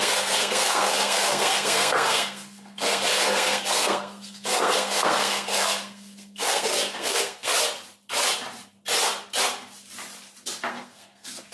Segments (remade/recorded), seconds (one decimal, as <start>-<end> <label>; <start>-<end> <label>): 0.0-7.5 remade; 7.5-10.7 recorded; 10.7-11.5 remade